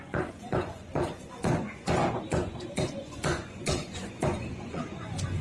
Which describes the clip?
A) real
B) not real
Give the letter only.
B